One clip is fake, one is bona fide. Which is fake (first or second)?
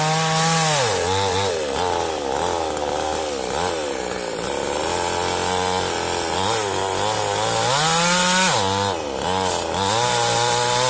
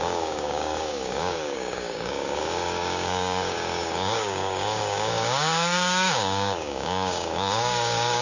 second